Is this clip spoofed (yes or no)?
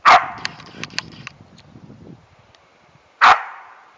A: no